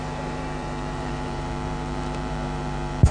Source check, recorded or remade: remade